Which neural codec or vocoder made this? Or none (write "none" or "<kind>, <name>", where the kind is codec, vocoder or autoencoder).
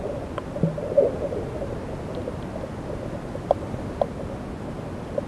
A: none